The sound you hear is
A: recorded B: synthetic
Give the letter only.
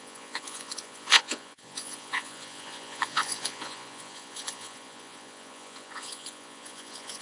B